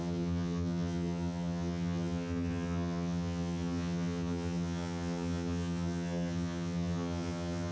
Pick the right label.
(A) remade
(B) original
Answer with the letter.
A